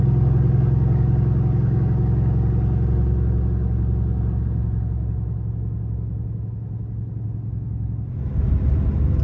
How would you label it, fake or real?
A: real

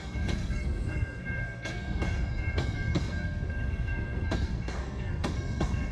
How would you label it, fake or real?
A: fake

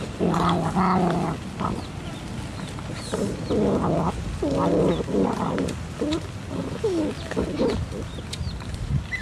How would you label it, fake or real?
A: real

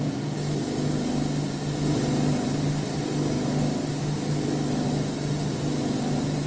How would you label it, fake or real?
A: real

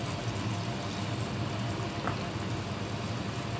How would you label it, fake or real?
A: real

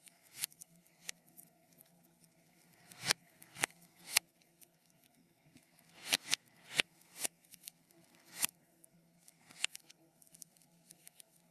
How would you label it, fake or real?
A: fake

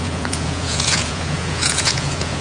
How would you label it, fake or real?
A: fake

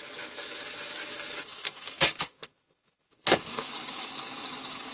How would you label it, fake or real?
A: fake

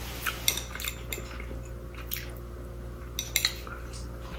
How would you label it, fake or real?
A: real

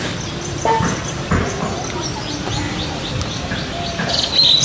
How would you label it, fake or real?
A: real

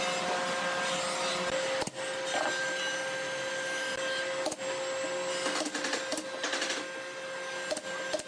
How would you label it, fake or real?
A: real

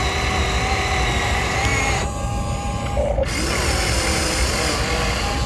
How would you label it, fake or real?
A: real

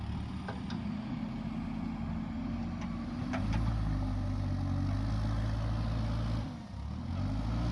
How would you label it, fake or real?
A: real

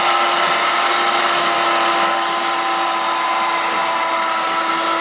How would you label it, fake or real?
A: real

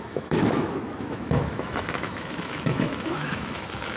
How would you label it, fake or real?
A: fake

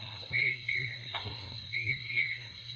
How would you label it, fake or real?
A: fake